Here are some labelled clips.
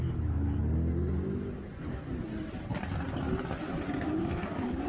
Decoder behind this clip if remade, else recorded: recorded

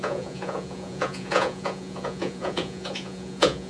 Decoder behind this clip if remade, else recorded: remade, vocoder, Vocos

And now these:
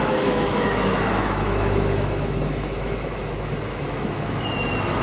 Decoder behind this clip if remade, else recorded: remade, autoencoder, DAC-VAE